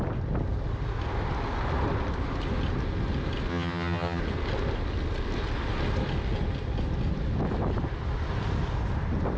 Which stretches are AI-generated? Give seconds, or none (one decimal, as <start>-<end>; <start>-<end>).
3.5-4.2